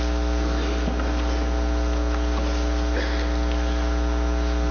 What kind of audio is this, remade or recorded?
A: recorded